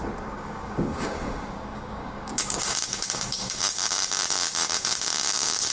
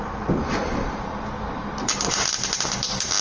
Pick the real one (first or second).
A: second